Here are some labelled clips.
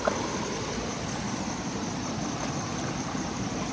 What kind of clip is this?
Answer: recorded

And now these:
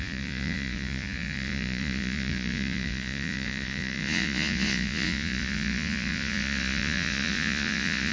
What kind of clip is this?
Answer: remade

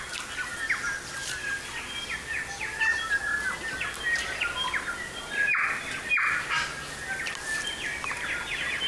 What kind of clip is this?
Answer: recorded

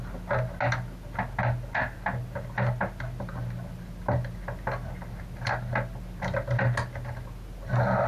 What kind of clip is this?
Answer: recorded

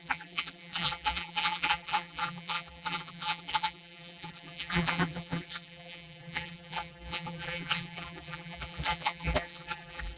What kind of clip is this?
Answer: remade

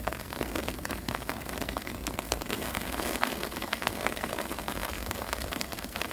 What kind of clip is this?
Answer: remade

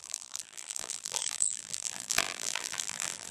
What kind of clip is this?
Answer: remade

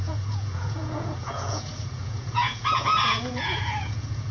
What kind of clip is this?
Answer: remade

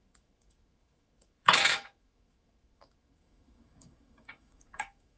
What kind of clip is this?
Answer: remade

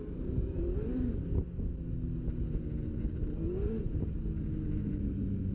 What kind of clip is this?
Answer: recorded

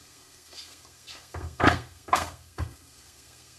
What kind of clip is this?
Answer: remade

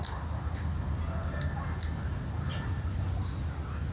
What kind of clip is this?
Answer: recorded